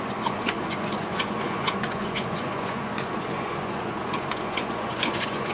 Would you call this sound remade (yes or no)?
yes